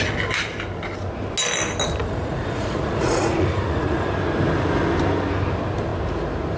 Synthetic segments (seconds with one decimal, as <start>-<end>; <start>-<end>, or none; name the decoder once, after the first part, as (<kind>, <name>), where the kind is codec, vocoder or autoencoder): 2.0-4.1 (vocoder, Vocos)